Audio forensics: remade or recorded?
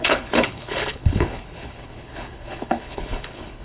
remade